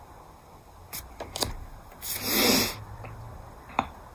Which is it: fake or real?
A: real